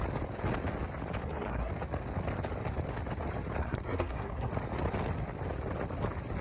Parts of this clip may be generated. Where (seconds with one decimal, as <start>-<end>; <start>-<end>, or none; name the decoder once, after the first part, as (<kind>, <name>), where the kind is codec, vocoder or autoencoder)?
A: 1.2-1.7 (codec, SNAC); 3.6-4.5